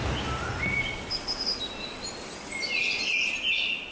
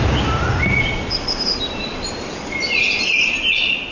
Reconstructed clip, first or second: second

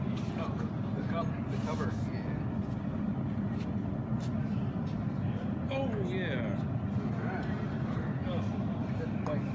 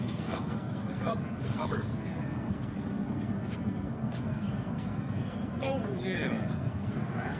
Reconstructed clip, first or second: second